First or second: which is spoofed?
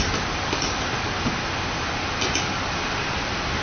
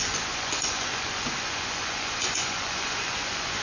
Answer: second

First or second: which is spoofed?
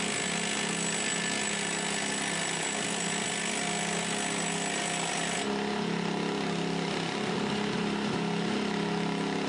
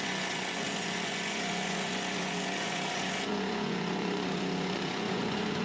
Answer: second